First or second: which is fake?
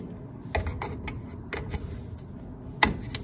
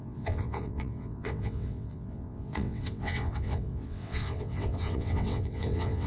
second